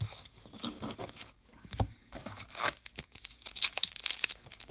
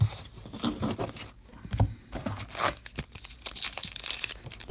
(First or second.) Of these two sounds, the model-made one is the first